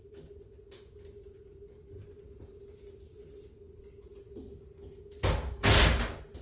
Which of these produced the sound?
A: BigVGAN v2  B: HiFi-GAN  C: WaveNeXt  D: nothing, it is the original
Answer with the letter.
D